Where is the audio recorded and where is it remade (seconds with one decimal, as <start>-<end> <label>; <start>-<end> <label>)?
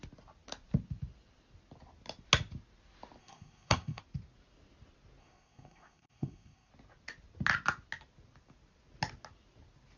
0.0-3.2 recorded; 3.2-4.0 remade; 4.0-5.2 recorded; 5.2-6.7 remade; 6.7-10.0 recorded